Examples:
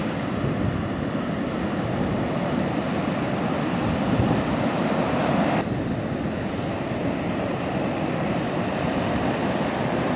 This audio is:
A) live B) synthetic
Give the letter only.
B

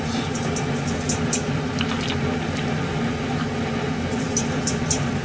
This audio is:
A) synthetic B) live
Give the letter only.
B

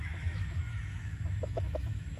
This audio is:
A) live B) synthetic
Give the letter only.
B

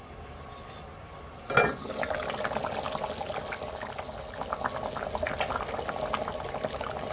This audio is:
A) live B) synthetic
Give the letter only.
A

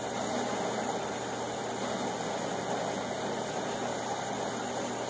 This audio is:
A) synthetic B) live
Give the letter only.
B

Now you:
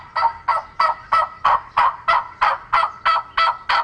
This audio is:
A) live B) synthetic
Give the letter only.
A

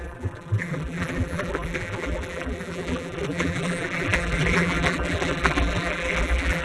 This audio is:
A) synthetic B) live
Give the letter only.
A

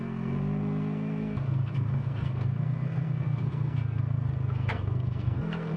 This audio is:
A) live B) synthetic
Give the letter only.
B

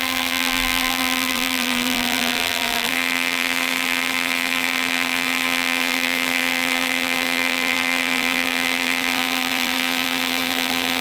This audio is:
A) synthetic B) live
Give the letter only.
A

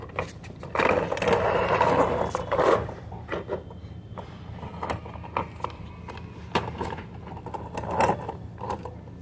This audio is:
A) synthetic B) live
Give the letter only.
B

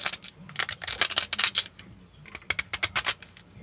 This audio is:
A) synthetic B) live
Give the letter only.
B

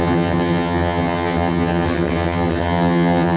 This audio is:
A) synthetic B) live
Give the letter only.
A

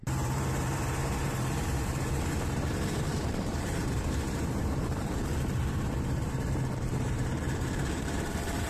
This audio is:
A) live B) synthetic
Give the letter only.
B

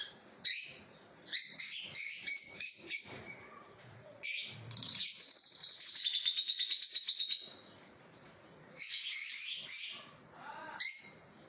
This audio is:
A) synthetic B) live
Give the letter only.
A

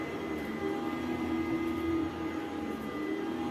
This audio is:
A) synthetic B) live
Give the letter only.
B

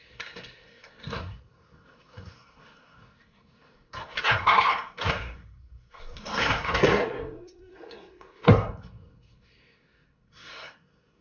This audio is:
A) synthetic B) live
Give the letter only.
A